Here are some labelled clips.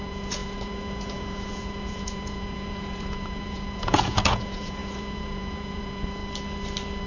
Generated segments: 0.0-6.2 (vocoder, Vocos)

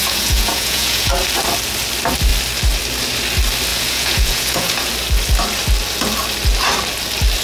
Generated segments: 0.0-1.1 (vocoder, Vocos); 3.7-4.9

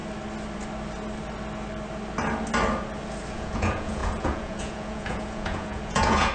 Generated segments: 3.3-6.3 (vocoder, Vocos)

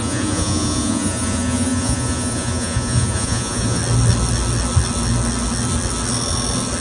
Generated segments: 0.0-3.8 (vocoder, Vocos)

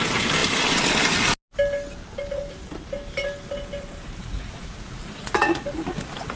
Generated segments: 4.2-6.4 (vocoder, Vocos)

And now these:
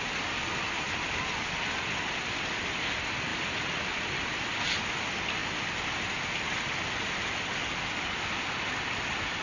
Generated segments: none

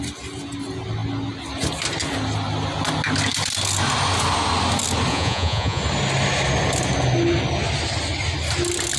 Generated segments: 5.1-5.8 (vocoder, Vocos)